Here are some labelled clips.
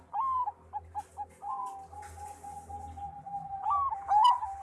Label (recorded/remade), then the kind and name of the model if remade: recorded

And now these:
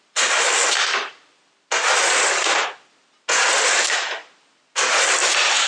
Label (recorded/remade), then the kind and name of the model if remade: recorded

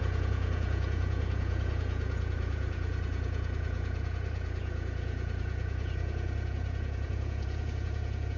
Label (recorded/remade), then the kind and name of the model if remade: remade, vocoder, Vocos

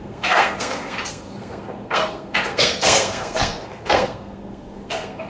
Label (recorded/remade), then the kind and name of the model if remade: remade, codec, SNAC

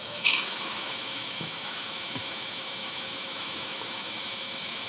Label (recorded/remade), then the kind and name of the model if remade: remade, autoencoder, DAC-VAE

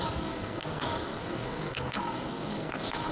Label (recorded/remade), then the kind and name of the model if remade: remade, codec, SNAC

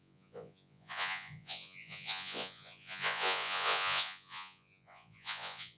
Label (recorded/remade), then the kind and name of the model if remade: remade, vocoder, Vocos